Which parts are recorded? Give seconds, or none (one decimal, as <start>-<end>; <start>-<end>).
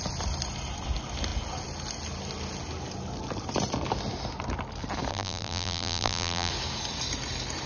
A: 0.0-5.1; 6.5-7.7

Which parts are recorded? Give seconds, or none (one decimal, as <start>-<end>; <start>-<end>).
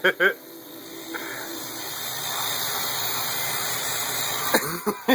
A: 0.0-1.2; 4.3-5.1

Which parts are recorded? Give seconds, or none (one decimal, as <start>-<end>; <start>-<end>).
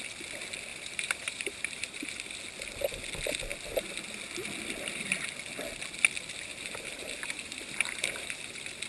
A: 0.0-0.7; 2.1-6.5; 8.4-8.9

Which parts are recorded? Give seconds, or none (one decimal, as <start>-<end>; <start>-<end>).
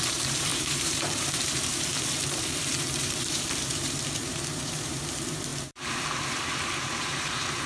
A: none